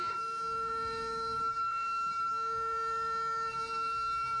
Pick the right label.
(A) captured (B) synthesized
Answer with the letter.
A